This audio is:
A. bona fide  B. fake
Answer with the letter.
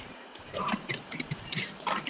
B